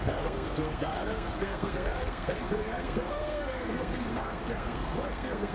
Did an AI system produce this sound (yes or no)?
yes